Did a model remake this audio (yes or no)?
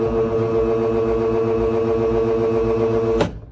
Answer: no